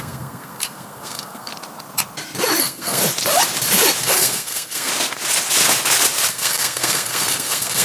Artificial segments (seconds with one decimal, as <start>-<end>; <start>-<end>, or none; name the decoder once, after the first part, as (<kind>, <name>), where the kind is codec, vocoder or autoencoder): 0.0-1.5 (codec, SNAC); 2.6-3.0; 4.0-4.9; 6.3-7.8